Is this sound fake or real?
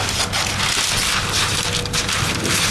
real